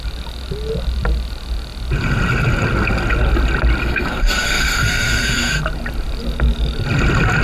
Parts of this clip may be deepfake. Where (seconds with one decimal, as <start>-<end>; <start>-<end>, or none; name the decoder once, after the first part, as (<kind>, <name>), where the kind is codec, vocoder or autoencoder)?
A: 3.8-5.5 (codec, SNAC)